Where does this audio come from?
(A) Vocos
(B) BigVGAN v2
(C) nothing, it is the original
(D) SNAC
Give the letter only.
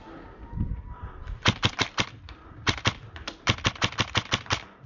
C